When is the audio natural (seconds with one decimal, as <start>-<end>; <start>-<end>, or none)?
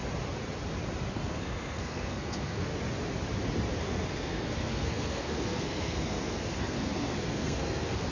0.0-1.1; 2.7-3.8